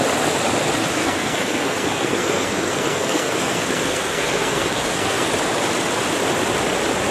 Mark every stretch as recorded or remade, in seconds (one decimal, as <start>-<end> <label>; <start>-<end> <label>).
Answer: 0.0-1.0 recorded; 1.0-5.3 remade; 5.3-7.1 recorded